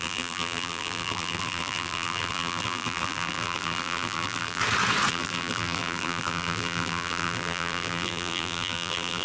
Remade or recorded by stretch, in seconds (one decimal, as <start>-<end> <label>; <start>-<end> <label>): 0.0-4.6 remade; 4.6-5.1 recorded; 5.1-9.2 remade